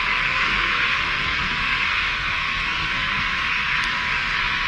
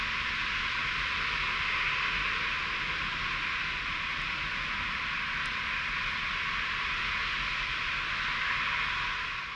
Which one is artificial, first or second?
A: first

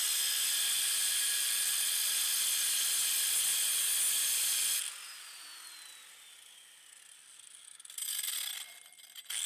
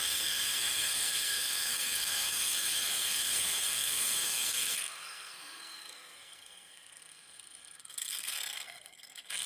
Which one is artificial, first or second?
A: second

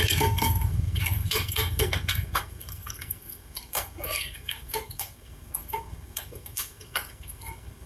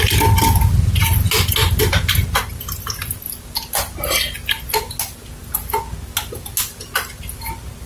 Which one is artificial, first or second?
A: first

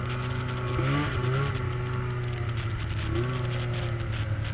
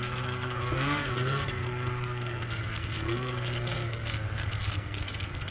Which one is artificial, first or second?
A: second